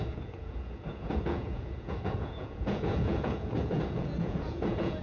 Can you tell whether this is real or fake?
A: fake